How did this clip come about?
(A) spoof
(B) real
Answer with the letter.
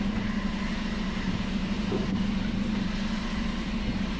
A